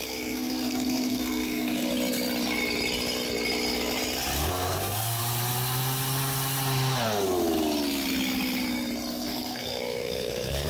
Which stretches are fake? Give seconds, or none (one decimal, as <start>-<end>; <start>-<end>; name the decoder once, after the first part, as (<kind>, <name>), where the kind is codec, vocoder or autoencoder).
0.0-1.9 (codec, SNAC); 4.5-5.2; 9.1-10.7